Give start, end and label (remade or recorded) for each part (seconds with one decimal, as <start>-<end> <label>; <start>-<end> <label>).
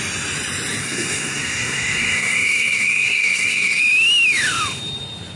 0.0-0.8 recorded; 0.8-3.8 remade; 3.8-5.4 recorded